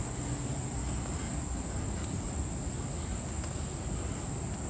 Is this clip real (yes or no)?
yes